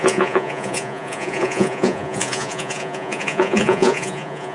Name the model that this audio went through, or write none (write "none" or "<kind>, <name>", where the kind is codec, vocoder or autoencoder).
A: vocoder, Vocos